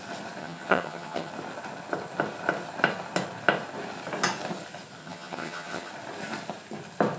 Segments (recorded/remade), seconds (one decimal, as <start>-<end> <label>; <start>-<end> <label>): 0.0-0.4 recorded; 0.4-1.3 remade; 1.3-5.0 recorded; 5.0-5.9 remade; 5.9-7.2 recorded